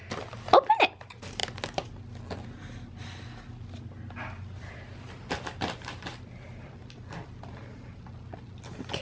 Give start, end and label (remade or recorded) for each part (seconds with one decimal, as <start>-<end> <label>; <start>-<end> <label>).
0.0-9.0 recorded